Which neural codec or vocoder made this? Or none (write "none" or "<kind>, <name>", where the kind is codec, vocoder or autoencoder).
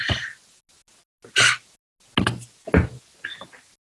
none